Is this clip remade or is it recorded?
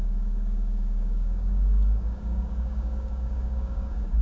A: remade